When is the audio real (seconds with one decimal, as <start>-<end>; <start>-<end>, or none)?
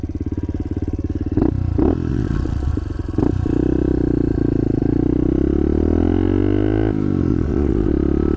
0.0-2.1; 2.7-7.3; 7.9-8.4